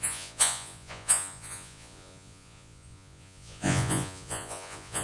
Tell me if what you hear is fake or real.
fake